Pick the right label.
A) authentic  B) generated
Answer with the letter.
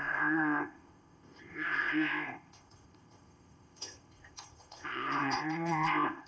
B